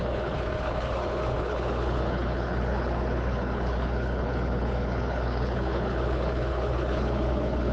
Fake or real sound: fake